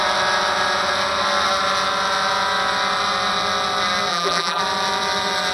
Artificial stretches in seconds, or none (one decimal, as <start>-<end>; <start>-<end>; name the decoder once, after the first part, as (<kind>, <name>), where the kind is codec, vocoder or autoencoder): 4.1-4.6 (vocoder, BigVGAN v2)